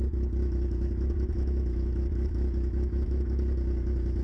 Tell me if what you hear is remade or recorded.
remade